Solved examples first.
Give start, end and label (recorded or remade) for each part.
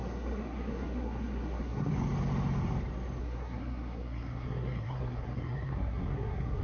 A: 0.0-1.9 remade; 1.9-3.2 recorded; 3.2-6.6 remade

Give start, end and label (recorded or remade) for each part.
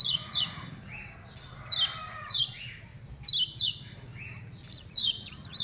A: 0.0-0.6 remade; 0.6-2.1 recorded; 2.1-2.9 remade; 2.9-3.6 recorded; 3.6-4.1 remade; 4.1-4.7 recorded; 4.7-5.6 remade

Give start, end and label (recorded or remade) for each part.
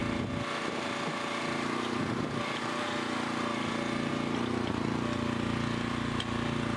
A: 0.0-6.8 recorded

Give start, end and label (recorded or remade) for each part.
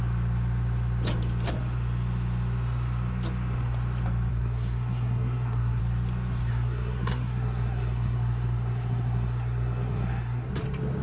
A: 0.0-4.3 recorded; 4.3-5.8 remade; 5.8-6.5 recorded; 6.5-10.5 remade; 10.5-11.0 recorded